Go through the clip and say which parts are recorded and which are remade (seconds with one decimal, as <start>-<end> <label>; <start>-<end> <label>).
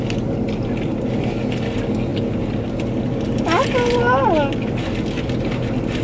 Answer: 0.0-6.0 recorded